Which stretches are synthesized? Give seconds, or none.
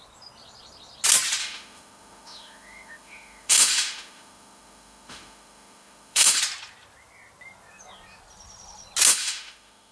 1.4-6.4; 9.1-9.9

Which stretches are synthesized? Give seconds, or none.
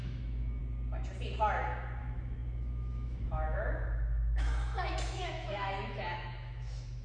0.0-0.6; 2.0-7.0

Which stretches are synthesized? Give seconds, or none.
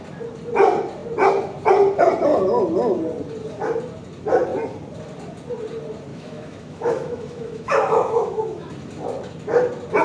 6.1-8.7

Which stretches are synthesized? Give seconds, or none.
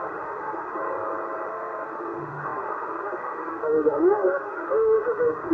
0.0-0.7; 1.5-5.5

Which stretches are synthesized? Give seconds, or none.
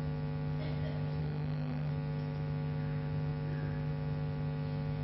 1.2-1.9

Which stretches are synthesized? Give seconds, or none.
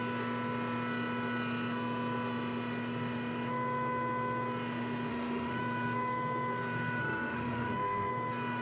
5.1-5.6; 7.0-8.1